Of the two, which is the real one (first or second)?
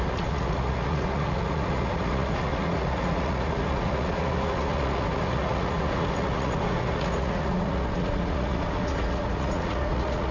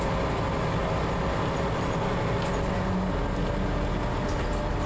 second